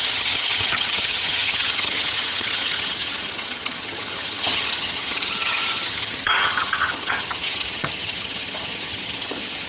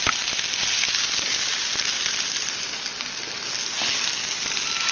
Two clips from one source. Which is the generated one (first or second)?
first